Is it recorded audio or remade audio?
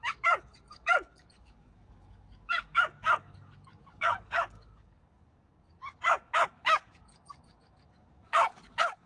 remade